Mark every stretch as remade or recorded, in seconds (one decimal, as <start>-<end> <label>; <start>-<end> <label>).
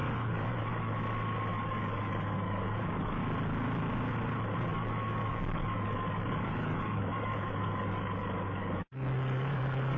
0.0-0.9 remade; 0.9-1.5 recorded; 1.5-3.2 remade; 3.2-4.7 recorded; 4.7-10.0 remade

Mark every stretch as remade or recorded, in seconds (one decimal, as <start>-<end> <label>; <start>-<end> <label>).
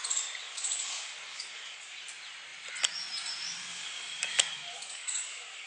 0.0-0.4 recorded; 0.4-2.0 remade; 2.0-3.7 recorded; 3.7-5.7 remade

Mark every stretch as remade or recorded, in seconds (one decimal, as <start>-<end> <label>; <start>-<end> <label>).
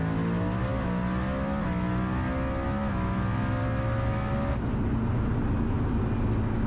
0.0-6.7 recorded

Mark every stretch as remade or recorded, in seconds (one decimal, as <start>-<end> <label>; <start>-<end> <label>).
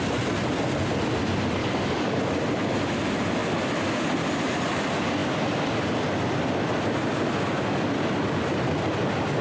0.0-1.6 recorded; 1.6-2.2 remade; 2.2-9.4 recorded